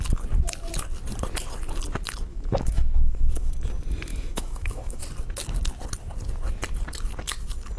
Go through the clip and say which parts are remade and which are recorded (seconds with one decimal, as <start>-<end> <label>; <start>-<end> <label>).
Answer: 0.0-2.3 recorded; 2.3-3.5 remade; 3.5-4.1 recorded; 4.1-5.0 remade; 5.0-7.8 recorded